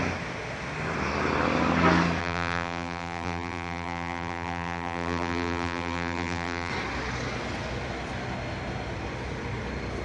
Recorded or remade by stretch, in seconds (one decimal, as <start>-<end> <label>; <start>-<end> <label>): 0.0-2.2 recorded; 2.2-6.7 remade; 6.7-10.0 recorded